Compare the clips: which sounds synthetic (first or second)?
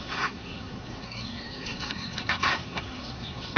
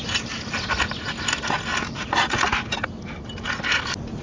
first